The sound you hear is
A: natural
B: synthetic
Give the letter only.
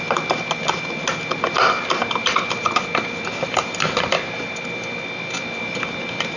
A